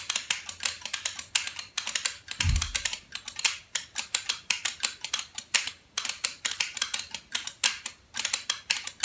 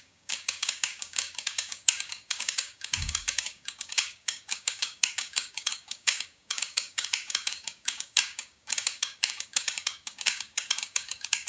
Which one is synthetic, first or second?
second